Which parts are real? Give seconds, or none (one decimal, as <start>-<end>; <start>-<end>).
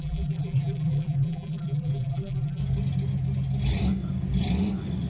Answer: 2.6-5.1